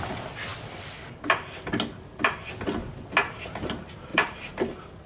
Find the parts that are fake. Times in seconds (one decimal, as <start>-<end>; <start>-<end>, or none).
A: 4.1-4.6